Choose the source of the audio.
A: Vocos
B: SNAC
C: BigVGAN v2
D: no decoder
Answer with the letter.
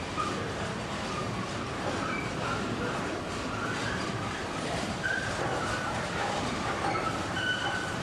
C